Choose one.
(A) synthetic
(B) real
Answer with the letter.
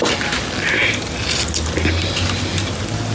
B